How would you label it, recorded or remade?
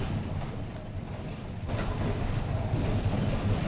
remade